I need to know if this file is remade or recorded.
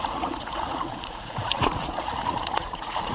remade